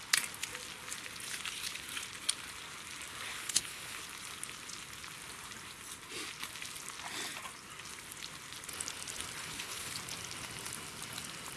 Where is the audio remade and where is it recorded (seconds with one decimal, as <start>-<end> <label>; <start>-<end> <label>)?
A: 0.0-3.3 recorded; 3.3-4.0 remade; 4.0-9.4 recorded; 9.4-10.0 remade; 10.0-11.6 recorded